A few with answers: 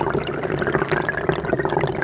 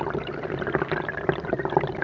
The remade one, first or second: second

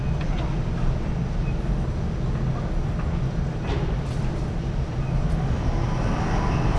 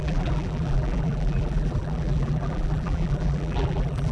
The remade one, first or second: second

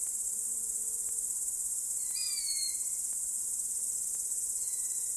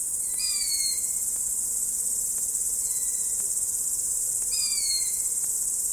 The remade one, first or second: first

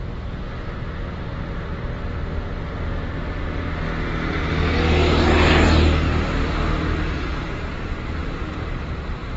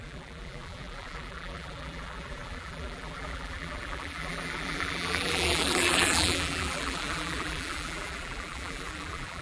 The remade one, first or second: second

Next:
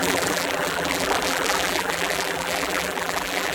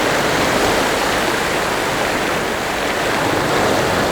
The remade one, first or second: first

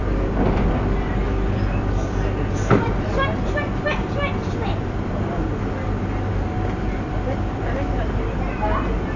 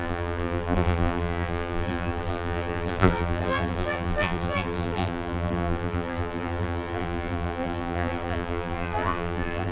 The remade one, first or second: second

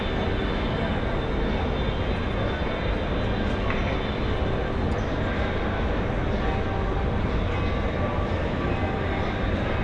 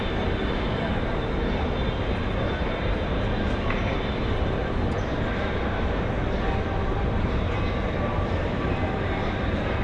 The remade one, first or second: second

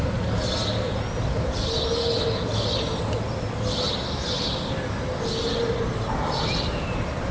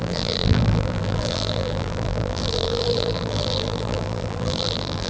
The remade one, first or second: second